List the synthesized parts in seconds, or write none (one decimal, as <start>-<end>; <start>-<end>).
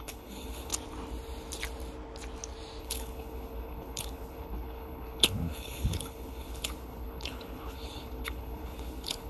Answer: 0.0-0.7; 2.8-9.3